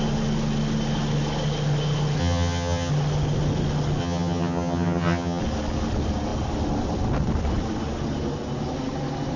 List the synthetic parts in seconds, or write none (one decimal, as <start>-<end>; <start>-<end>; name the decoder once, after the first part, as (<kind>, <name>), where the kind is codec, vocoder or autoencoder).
2.2-2.9 (vocoder, HiFi-GAN); 4.0-5.4